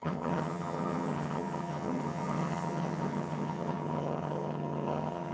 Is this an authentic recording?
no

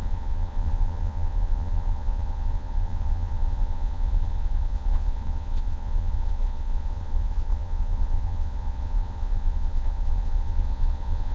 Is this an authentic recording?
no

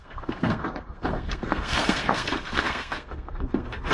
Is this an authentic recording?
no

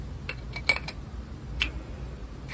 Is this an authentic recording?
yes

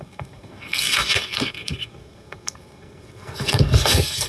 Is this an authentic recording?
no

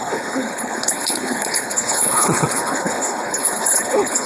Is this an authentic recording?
no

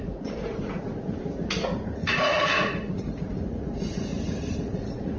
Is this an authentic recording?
no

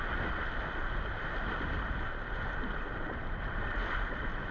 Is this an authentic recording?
yes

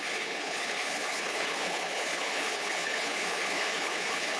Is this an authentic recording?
no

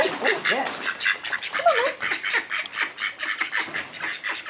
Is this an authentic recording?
yes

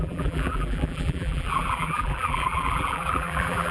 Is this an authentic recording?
no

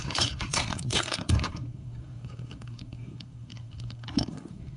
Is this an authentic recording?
no